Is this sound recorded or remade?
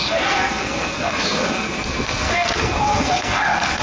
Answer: remade